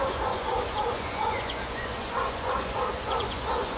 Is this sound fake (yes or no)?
yes